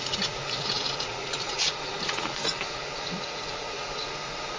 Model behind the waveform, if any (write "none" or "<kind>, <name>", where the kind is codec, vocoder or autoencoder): vocoder, Vocos